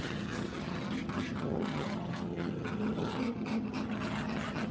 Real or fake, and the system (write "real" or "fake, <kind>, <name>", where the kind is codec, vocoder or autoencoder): fake, vocoder, HiFi-GAN